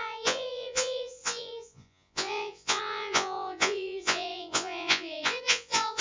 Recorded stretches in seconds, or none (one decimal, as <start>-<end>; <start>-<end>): none